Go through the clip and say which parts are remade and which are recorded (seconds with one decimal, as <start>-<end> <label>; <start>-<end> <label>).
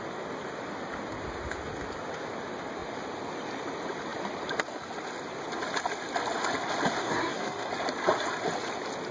0.0-7.0 recorded; 7.0-7.7 remade; 7.7-9.1 recorded